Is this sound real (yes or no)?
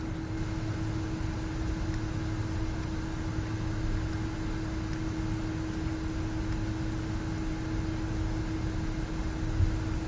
yes